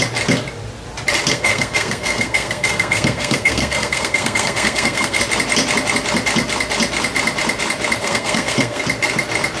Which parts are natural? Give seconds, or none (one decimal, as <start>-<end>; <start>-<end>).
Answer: 0.0-1.3; 5.2-8.0; 8.8-9.6